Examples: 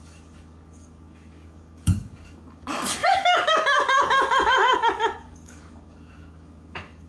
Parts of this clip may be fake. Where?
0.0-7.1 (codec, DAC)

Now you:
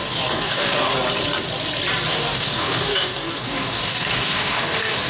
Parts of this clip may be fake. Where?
0.0-0.9 (codec, DAC); 2.1-5.1

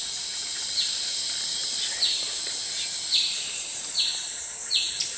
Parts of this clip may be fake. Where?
none

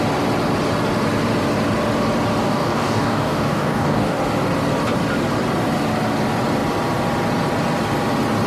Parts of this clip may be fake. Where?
2.4-4.2 (codec, DAC)

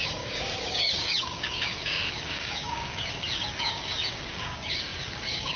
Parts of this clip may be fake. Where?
0.0-5.6 (codec, DAC)

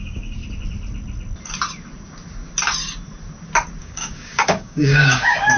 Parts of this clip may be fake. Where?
0.0-0.4 (codec, DAC); 3.8-5.6